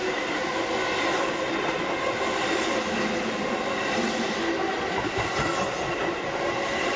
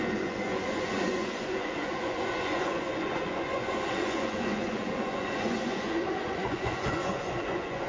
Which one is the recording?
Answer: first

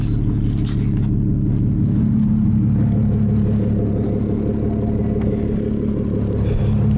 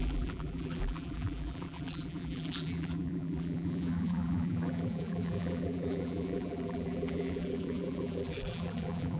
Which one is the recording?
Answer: first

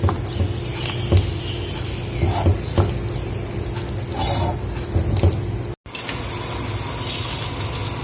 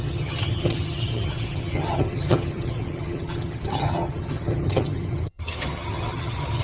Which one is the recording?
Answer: first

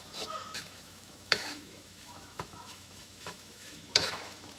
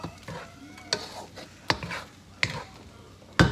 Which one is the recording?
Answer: second